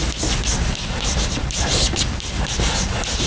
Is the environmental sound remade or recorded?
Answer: recorded